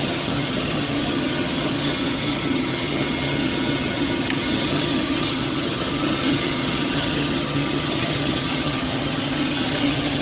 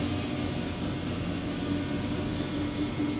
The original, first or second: second